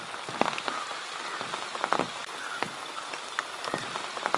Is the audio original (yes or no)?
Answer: yes